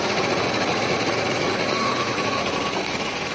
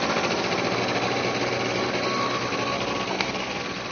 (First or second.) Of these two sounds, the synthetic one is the first